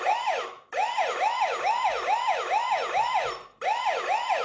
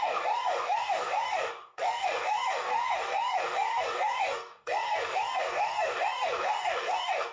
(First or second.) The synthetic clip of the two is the second